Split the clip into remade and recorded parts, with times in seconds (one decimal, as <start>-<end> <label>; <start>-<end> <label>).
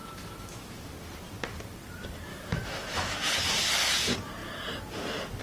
0.0-0.9 remade; 0.9-2.3 recorded; 2.3-3.3 remade; 3.3-5.4 recorded